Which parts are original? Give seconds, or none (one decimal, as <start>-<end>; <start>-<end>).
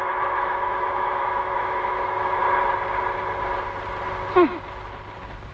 2.4-5.5